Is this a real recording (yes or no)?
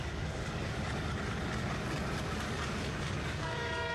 no